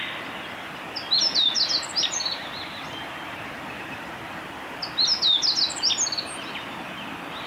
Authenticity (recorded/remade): recorded